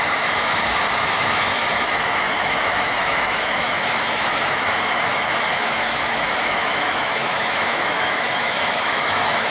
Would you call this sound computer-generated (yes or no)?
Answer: yes